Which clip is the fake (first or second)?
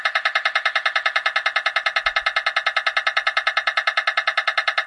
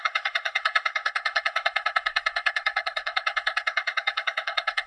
second